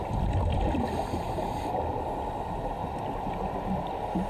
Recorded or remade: recorded